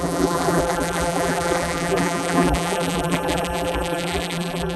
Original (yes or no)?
no